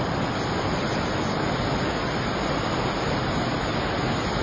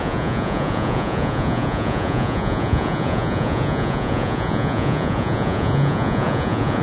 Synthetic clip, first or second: second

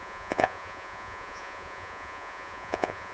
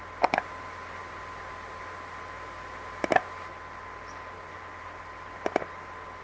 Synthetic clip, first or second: first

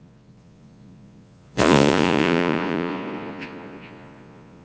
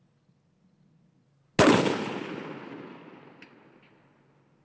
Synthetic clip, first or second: first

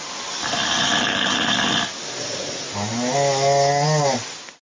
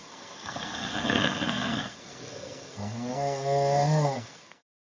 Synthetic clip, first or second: second